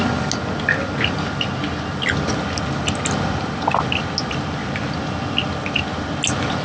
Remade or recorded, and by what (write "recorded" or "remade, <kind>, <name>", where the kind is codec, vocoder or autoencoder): recorded